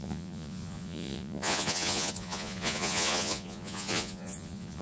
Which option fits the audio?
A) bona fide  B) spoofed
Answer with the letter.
B